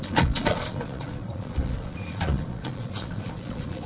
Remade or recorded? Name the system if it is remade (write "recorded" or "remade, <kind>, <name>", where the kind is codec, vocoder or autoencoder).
remade, vocoder, Vocos